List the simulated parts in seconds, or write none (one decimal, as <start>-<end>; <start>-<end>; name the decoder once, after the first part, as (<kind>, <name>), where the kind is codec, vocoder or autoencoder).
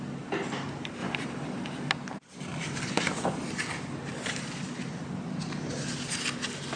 1.0-1.9 (vocoder, BigVGAN v2)